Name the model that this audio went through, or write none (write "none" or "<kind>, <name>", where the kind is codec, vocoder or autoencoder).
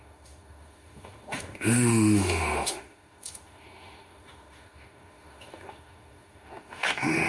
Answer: autoencoder, DAC-VAE